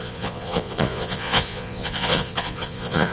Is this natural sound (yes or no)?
no